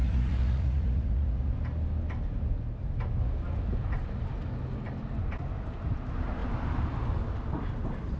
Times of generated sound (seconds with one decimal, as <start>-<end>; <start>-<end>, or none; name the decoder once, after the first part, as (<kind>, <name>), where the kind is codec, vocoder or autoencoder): 0.0-1.5 (vocoder, Vocos)